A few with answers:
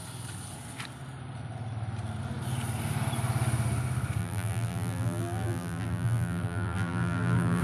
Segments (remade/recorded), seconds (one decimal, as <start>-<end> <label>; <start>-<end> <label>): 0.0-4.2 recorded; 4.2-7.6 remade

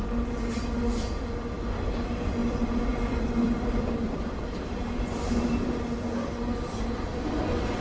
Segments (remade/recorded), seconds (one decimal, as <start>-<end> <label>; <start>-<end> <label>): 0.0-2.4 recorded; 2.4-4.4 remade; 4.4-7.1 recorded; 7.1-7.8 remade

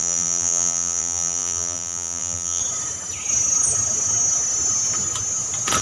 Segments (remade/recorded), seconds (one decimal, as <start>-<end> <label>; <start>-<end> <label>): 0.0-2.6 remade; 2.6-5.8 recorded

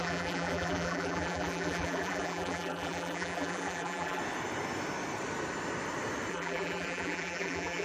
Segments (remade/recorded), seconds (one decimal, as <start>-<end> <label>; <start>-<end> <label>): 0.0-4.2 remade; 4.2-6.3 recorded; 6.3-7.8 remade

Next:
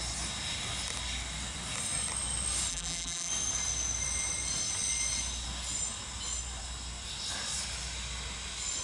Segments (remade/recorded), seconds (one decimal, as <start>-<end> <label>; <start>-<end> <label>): 0.0-2.7 recorded; 2.7-3.3 remade; 3.3-8.8 recorded